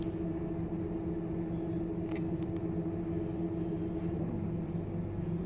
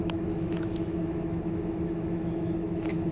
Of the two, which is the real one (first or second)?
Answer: first